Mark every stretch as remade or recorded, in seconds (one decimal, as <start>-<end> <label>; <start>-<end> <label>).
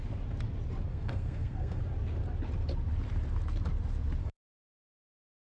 0.0-0.9 recorded; 0.9-1.8 remade; 1.8-4.2 recorded; 4.2-4.9 remade; 4.9-5.6 recorded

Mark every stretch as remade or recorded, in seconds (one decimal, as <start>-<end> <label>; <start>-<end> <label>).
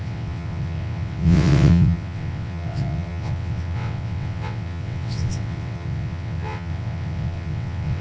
0.0-8.0 remade